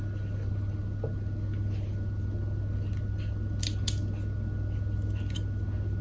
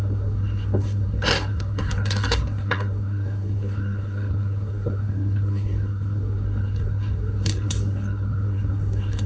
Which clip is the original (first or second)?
first